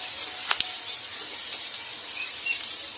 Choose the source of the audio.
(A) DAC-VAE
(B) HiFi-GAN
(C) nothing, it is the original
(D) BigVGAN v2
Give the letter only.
D